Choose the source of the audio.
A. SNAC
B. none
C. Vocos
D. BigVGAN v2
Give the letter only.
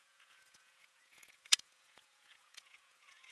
C